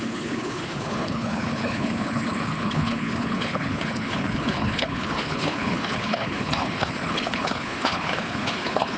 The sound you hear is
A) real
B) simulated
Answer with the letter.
B